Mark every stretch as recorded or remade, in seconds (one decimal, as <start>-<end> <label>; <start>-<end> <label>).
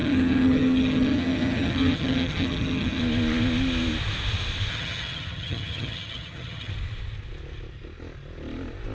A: 0.0-3.0 remade; 3.0-4.7 recorded; 4.7-6.7 remade; 6.7-8.9 recorded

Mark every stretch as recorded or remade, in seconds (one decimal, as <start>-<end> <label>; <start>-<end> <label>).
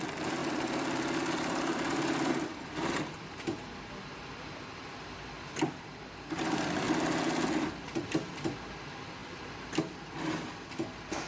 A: 0.0-0.4 recorded; 0.4-2.3 remade; 2.3-11.3 recorded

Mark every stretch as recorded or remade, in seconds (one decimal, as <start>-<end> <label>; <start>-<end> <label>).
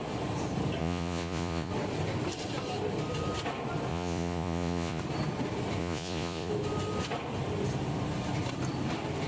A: 0.0-0.8 recorded; 0.8-1.7 remade; 1.7-3.9 recorded; 3.9-5.0 remade; 5.0-5.8 recorded; 5.8-6.5 remade; 6.5-9.3 recorded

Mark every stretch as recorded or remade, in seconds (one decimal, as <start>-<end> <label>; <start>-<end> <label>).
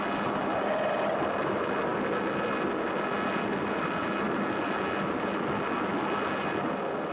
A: 0.0-7.1 recorded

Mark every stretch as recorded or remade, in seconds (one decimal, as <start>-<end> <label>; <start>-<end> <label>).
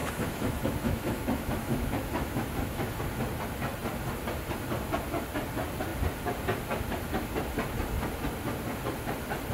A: 0.0-3.0 remade; 3.0-9.5 recorded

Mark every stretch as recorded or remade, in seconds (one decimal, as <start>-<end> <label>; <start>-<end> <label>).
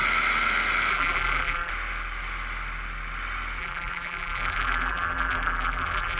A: 0.0-0.9 recorded; 0.9-1.7 remade; 1.7-3.6 recorded; 3.6-6.2 remade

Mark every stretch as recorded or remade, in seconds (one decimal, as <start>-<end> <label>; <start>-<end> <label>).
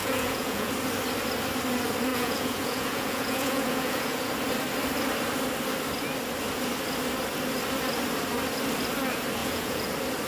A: 0.0-0.7 remade; 0.7-2.1 recorded; 2.1-4.3 remade; 4.3-9.4 recorded; 9.4-9.9 remade; 9.9-10.3 recorded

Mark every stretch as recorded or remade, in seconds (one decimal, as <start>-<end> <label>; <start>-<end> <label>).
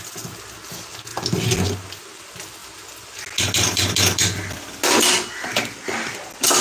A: 0.0-6.6 recorded